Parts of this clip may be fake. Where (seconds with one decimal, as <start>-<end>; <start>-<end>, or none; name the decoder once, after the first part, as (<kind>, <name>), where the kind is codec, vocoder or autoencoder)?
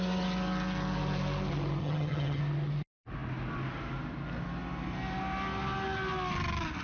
1.8-2.4 (vocoder, HiFi-GAN)